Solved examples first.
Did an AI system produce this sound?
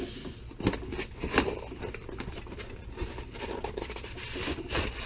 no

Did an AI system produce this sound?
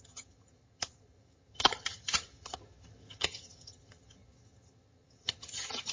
yes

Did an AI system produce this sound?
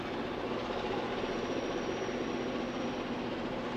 no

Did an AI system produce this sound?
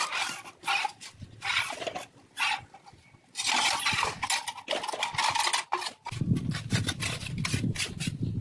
no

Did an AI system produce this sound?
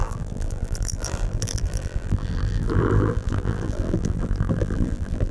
yes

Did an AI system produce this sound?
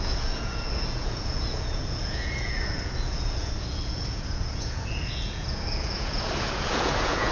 yes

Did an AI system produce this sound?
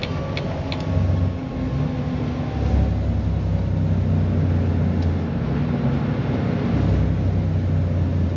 no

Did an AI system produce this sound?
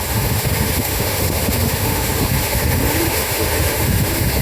yes